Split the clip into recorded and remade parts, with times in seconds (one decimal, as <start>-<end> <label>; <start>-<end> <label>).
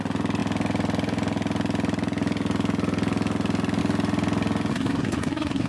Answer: 0.0-4.7 recorded; 4.7-5.7 remade